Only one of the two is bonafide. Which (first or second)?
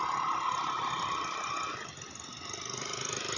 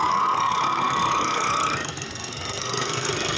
first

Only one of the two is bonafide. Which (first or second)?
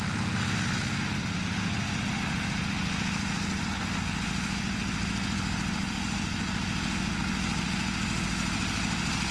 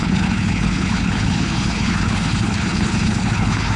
first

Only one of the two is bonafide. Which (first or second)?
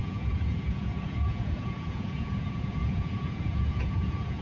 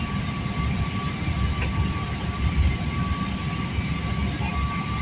second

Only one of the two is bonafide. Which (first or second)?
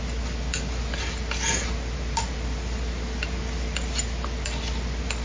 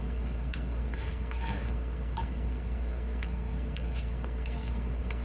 first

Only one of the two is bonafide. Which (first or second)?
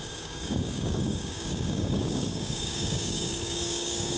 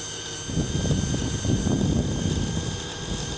second